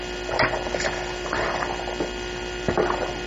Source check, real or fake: real